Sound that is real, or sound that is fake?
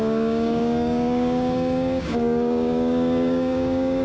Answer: fake